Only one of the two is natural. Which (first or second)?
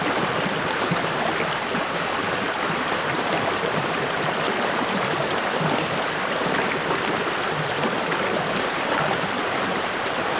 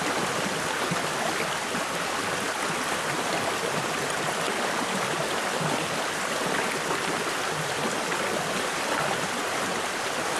second